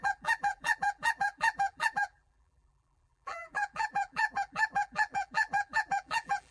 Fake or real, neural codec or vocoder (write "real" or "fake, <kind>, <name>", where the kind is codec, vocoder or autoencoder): fake, vocoder, BigVGAN v2